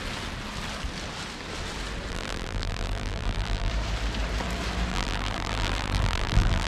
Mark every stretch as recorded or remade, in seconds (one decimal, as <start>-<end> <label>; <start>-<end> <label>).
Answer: 0.0-2.1 recorded; 2.1-3.7 remade; 3.7-4.9 recorded; 4.9-6.7 remade